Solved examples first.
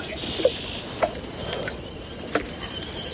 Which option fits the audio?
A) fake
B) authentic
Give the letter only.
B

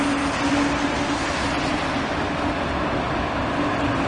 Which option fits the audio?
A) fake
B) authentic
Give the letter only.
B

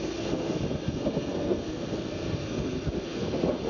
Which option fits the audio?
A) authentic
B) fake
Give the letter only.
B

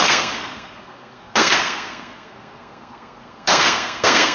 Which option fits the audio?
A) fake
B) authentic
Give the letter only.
A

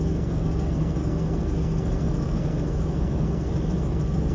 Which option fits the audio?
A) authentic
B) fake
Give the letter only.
B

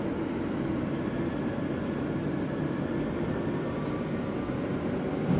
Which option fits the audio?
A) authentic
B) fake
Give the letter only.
A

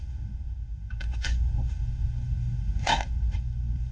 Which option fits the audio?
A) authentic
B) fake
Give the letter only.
B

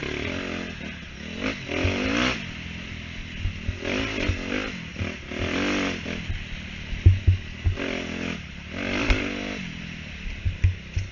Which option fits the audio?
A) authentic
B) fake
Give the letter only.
A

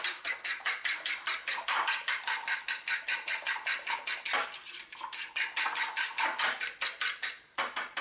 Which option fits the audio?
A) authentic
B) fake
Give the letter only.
A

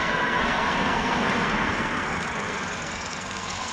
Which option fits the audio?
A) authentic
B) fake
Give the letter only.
B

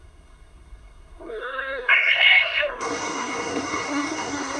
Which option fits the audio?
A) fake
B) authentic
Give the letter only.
A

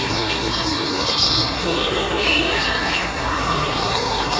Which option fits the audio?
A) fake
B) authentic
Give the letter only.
A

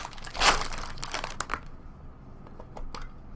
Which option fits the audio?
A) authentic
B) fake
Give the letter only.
A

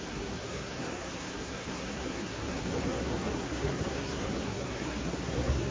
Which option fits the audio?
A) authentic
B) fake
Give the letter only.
B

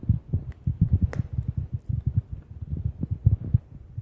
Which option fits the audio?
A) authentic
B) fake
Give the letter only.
A